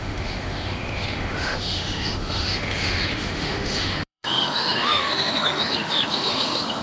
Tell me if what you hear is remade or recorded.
remade